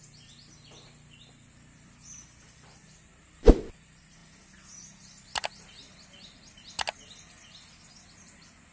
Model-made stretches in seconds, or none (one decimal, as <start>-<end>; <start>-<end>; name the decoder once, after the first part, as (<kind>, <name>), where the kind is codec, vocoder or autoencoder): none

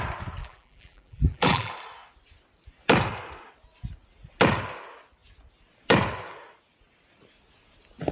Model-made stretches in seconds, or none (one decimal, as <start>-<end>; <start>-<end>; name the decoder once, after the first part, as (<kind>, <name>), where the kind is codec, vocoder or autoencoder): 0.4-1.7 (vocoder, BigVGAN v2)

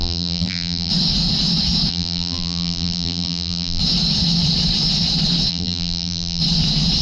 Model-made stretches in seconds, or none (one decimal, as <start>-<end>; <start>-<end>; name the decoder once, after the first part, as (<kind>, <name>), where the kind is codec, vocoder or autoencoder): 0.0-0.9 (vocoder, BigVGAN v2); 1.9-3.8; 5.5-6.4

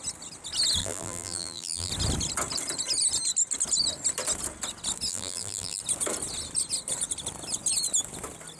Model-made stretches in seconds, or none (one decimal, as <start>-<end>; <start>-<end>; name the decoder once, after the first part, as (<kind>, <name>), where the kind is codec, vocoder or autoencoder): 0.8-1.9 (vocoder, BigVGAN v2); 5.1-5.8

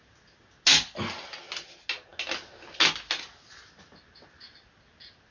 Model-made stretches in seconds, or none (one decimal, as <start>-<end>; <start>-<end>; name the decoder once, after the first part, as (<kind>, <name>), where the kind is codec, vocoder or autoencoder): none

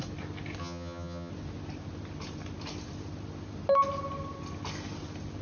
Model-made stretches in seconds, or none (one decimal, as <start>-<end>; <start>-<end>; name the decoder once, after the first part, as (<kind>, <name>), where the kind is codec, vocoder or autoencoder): 0.6-1.3 (vocoder, HiFi-GAN)

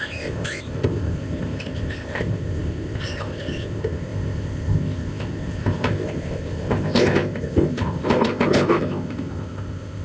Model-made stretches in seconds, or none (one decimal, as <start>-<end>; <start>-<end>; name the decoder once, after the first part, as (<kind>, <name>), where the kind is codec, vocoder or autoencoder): 0.0-10.0 (codec, ZipCodec)

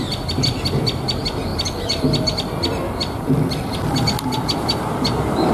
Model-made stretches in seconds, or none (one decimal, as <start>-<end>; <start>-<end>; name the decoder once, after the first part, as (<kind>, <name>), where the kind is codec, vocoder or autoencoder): 1.5-4.8 (vocoder, BigVGAN v2)